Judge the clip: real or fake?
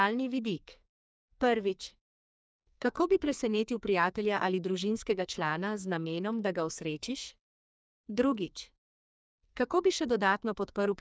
fake